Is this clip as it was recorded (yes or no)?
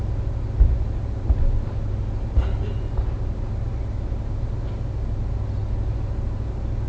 yes